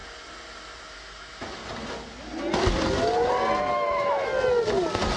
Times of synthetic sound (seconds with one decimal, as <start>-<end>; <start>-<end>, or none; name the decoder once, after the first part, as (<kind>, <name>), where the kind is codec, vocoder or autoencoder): 0.9-1.6 (autoencoder, DAC-VAE); 3.7-4.3